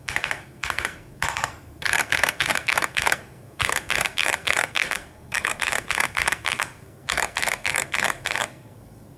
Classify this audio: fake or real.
fake